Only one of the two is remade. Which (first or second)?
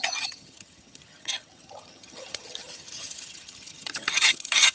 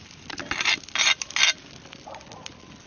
first